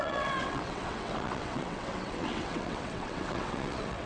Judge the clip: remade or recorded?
remade